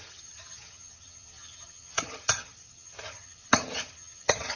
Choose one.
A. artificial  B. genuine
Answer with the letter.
A